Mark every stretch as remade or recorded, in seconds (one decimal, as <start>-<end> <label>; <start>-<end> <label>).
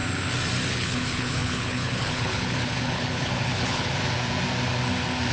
0.0-0.7 recorded; 0.7-4.0 remade; 4.0-5.3 recorded